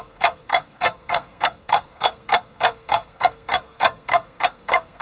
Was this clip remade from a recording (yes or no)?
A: yes